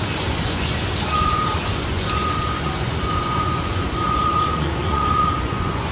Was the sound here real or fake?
fake